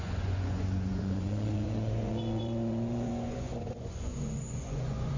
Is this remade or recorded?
remade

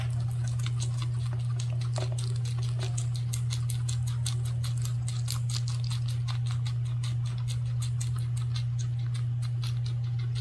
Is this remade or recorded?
recorded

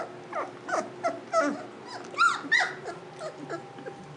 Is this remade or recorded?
recorded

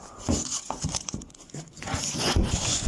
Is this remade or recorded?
remade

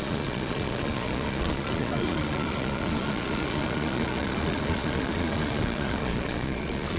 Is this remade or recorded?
remade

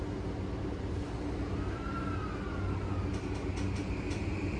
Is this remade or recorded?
recorded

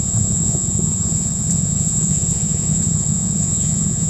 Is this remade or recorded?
remade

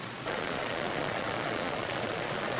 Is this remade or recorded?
remade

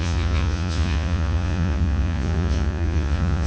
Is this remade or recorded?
remade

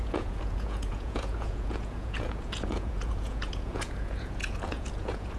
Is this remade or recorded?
remade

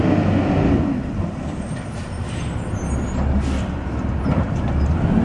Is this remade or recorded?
recorded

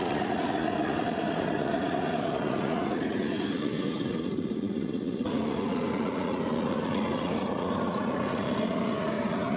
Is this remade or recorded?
remade